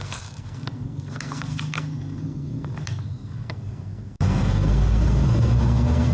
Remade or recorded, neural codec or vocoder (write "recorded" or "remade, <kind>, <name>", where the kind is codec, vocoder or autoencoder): remade, codec, SNAC